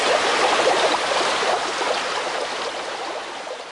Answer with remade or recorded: recorded